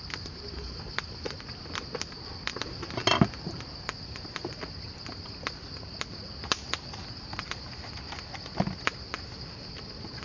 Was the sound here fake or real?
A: real